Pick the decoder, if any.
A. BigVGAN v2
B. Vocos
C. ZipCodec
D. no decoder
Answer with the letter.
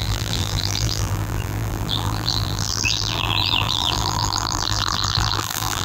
A